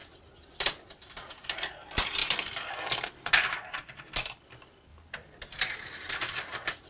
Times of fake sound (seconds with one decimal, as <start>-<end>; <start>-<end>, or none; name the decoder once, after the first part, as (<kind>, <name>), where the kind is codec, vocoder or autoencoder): 0.0-0.9 (vocoder, BigVGAN v2); 2.2-3.5